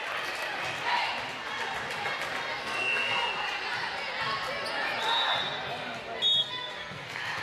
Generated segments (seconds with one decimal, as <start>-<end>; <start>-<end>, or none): 2.5-3.2; 6.4-7.4